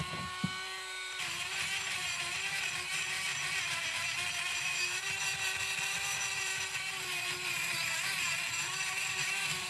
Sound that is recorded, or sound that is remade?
remade